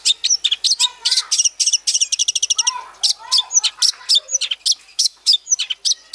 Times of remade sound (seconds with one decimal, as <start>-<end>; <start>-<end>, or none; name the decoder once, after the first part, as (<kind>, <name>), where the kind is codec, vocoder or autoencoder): 4.9-5.5 (autoencoder, DAC-VAE)